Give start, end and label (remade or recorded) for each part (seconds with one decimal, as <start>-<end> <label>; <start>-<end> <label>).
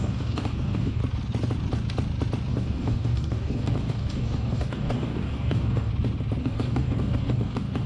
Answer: 0.0-1.0 remade; 1.0-2.5 recorded; 2.5-5.9 remade; 5.9-6.4 recorded; 6.4-7.9 remade